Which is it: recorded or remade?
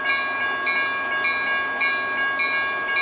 recorded